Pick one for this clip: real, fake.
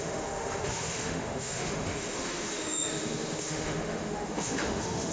fake